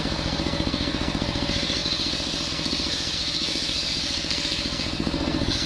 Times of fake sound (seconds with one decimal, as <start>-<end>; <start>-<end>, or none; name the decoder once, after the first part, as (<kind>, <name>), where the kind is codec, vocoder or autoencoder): 0.0-5.7 (codec, SNAC)